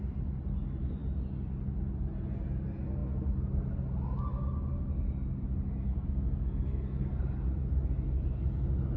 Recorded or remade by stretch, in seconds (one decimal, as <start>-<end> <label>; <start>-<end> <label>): 0.0-5.9 recorded; 5.9-7.2 remade; 7.2-9.0 recorded